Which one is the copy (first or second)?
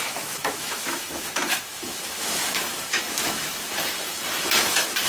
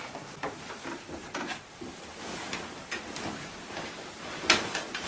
first